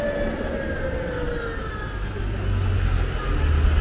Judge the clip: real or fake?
real